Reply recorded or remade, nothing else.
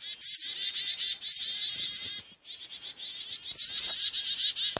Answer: recorded